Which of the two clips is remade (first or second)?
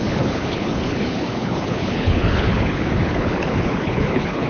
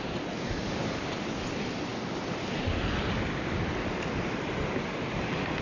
first